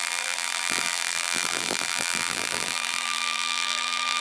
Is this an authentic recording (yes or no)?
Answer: no